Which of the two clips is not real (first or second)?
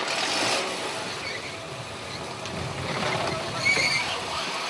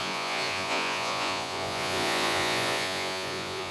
second